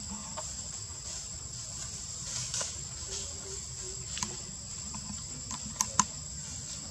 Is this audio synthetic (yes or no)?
no